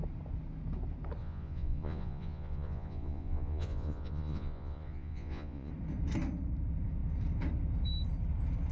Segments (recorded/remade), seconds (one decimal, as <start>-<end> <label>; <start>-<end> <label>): 0.0-1.2 recorded; 1.2-5.7 remade; 5.7-8.7 recorded